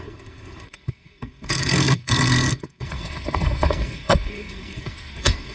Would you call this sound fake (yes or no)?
yes